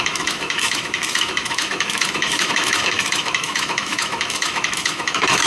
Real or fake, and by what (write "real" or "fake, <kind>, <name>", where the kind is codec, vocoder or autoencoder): fake, autoencoder, DAC-VAE